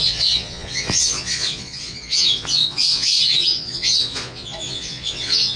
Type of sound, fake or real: fake